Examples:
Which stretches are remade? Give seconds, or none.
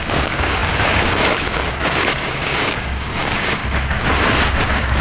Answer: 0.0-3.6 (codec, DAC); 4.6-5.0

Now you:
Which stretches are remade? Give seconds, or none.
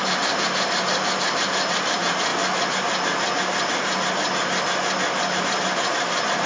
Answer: 0.0-2.3 (vocoder, BigVGAN v2); 5.4-6.5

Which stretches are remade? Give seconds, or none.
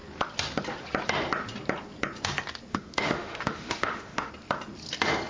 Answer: 2.7-4.3 (autoencoder, DAC-VAE)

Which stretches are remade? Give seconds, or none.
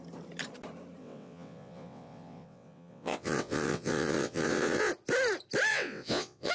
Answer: 1.0-4.9 (vocoder, WaveNeXt); 5.7-6.5